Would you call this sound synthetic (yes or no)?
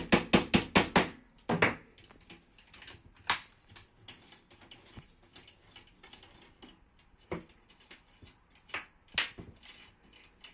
no